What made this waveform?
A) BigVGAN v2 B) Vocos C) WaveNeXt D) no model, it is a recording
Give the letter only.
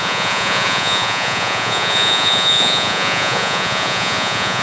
B